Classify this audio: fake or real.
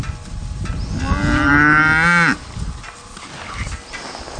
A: real